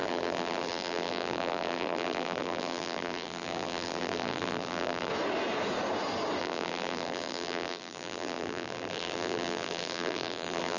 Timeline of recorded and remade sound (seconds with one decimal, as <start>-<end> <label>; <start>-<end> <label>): 0.0-5.1 remade; 5.1-6.4 recorded; 6.4-10.8 remade